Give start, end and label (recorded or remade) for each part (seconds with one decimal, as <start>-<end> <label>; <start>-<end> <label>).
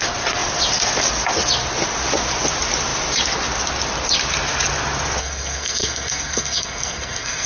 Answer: 0.0-5.2 recorded; 5.2-7.5 remade